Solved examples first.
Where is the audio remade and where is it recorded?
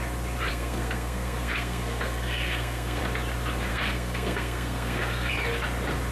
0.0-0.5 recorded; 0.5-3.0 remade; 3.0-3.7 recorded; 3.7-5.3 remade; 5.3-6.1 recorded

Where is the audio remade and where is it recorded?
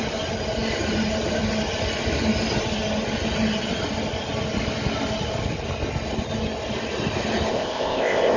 0.0-7.5 recorded; 7.5-8.4 remade